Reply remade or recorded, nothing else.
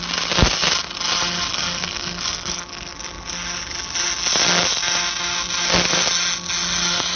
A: recorded